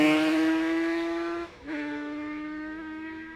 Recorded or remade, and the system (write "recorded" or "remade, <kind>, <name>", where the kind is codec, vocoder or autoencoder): remade, autoencoder, DAC-VAE